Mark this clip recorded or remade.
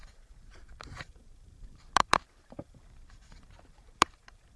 remade